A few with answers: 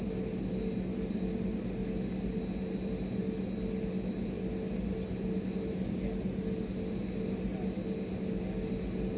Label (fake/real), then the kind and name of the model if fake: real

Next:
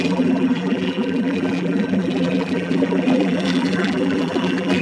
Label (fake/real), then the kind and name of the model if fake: fake, vocoder, BigVGAN v2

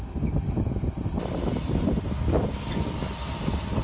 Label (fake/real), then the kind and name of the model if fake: real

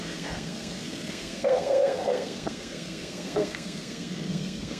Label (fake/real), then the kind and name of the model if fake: fake, codec, SNAC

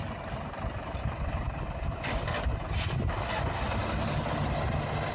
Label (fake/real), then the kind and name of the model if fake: real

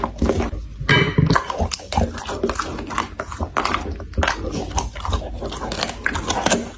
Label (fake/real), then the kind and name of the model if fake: real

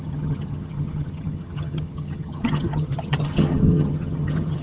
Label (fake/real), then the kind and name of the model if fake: fake, vocoder, HiFi-GAN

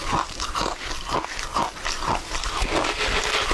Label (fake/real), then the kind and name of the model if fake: real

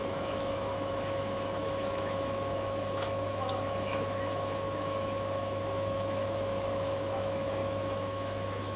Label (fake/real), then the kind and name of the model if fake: fake, autoencoder, DAC-VAE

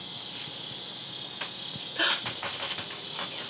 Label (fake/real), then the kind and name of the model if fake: real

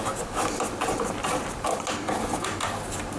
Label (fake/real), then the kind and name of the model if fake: real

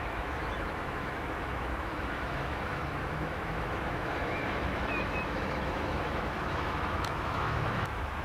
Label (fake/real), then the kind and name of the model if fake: fake, autoencoder, DAC-VAE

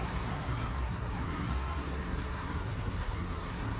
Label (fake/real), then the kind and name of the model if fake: fake, codec, SNAC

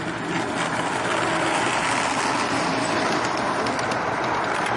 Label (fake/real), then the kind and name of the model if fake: fake, vocoder, BigVGAN v2